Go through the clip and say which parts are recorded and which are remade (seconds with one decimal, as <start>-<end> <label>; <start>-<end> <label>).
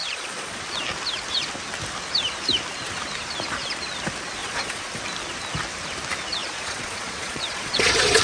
0.0-0.6 remade; 0.6-4.4 recorded; 4.4-4.9 remade; 4.9-6.4 recorded; 6.4-8.2 remade